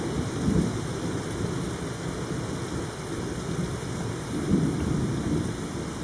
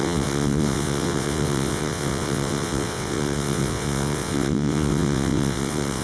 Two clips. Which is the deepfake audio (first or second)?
second